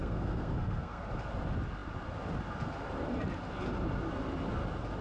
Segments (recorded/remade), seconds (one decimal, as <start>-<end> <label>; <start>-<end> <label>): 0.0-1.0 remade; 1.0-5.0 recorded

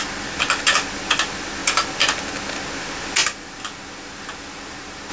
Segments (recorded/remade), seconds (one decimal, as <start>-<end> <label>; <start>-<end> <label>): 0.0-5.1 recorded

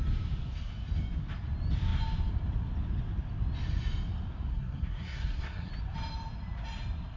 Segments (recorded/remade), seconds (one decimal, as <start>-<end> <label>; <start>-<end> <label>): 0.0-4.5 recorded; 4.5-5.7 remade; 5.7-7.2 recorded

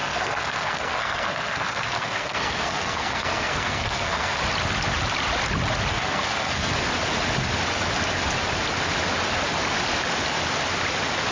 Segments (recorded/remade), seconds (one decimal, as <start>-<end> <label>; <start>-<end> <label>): 0.0-4.4 remade; 4.4-5.9 recorded; 5.9-6.7 remade; 6.7-11.3 recorded

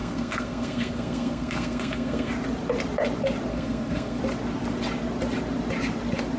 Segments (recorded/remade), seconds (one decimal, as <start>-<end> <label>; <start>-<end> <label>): 0.0-2.3 remade; 2.3-3.5 recorded; 3.5-4.2 remade; 4.2-6.4 recorded

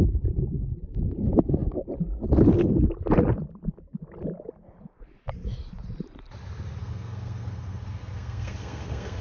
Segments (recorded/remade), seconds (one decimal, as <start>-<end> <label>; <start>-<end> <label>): 0.0-6.8 recorded; 6.8-9.2 remade

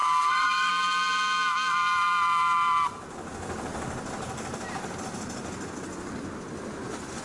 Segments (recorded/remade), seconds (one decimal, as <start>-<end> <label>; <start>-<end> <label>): 0.0-0.7 remade; 0.7-7.2 recorded